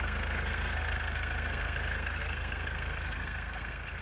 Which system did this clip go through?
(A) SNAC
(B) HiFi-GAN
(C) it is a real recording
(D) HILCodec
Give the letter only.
A